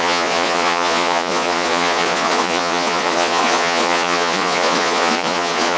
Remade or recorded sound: remade